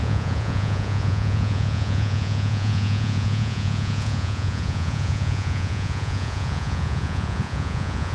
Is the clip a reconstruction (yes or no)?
yes